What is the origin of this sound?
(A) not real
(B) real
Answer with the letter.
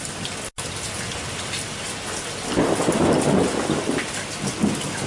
B